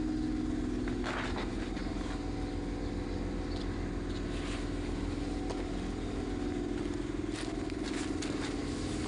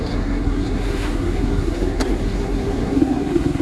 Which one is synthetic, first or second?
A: second